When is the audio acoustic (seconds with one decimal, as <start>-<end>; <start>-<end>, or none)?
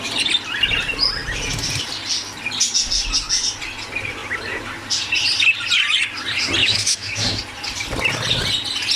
0.0-6.6; 7.4-9.0